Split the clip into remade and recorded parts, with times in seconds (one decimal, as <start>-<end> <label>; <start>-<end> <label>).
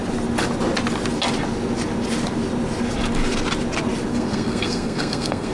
0.0-4.1 recorded; 4.1-5.5 remade